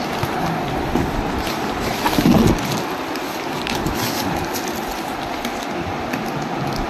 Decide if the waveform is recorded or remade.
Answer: recorded